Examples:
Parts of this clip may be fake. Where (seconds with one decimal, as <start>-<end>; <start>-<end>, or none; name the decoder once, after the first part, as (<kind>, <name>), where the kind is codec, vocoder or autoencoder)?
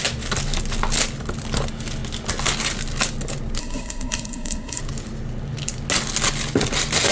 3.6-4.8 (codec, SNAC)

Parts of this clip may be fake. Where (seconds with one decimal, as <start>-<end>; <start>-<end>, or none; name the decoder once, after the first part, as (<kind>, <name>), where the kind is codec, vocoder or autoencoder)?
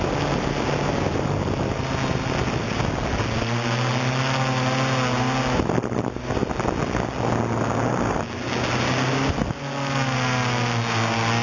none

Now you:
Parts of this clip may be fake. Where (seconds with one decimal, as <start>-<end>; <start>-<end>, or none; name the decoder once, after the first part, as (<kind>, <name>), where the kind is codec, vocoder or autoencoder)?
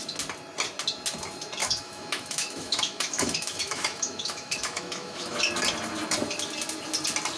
1.6-5.4 (autoencoder, DAC-VAE)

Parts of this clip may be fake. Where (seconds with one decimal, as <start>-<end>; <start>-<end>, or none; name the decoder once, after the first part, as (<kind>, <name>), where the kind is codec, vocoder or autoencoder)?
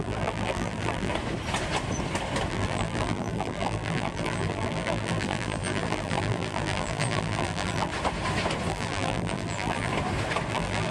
0.0-1.1 (vocoder, BigVGAN v2); 2.5-7.9; 8.7-9.9; 10.5-10.9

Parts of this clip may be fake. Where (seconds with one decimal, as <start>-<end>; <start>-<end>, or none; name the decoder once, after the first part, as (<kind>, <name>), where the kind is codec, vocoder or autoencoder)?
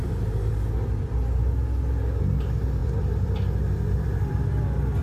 0.0-0.6 (vocoder, BigVGAN v2); 2.8-4.2